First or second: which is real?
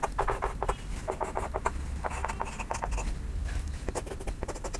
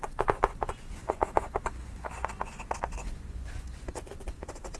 first